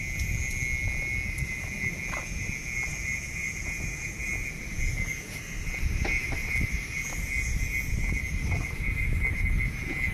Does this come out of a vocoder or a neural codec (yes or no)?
no